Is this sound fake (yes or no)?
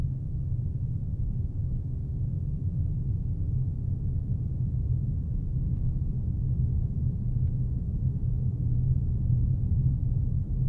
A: no